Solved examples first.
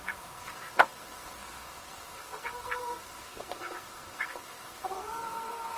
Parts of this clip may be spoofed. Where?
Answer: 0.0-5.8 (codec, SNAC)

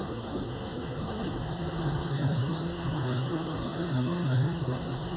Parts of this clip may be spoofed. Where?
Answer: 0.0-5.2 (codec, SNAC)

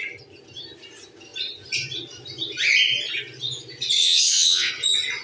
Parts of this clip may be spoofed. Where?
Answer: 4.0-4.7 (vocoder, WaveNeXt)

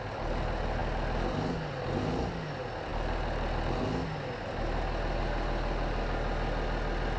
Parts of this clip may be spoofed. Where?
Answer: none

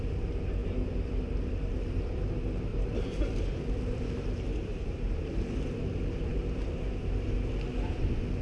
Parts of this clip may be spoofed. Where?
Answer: 2.7-5.8 (vocoder, BigVGAN v2)